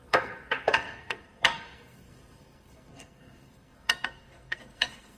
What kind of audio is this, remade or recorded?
remade